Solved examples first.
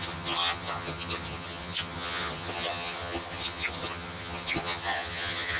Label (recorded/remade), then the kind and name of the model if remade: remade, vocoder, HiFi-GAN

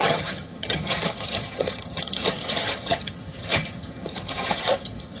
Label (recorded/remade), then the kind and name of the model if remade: remade, vocoder, HiFi-GAN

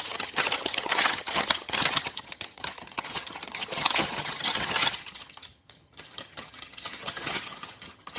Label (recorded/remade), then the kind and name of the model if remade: remade, vocoder, HiFi-GAN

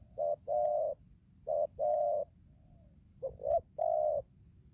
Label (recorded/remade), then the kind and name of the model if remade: recorded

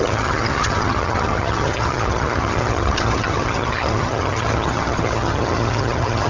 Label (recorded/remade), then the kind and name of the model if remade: remade, vocoder, HiFi-GAN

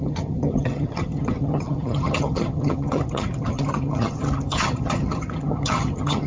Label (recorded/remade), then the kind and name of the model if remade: remade, vocoder, HiFi-GAN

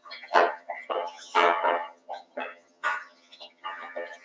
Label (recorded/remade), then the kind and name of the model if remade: remade, vocoder, HiFi-GAN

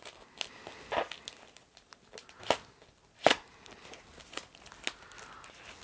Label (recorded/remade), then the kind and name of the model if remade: recorded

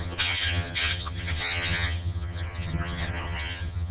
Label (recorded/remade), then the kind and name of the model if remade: remade, vocoder, HiFi-GAN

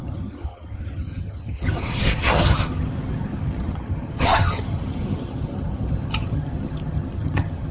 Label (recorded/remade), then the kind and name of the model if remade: remade, vocoder, HiFi-GAN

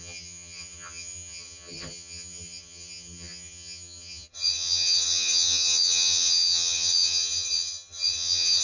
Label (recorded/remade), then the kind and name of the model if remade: remade, vocoder, HiFi-GAN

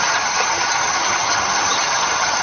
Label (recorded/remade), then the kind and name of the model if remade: remade, vocoder, HiFi-GAN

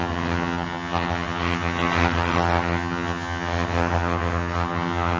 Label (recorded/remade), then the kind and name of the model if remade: remade, vocoder, HiFi-GAN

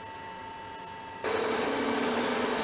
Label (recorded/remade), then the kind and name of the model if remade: recorded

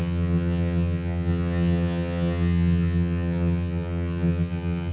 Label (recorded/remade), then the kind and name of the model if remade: remade, vocoder, HiFi-GAN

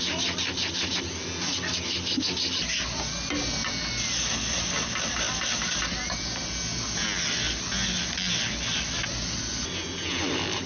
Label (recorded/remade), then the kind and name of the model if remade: recorded